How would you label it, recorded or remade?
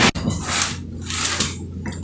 recorded